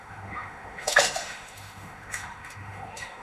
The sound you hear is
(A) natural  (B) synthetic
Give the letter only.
B